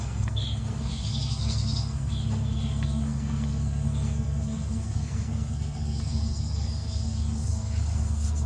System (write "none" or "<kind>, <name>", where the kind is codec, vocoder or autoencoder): codec, SNAC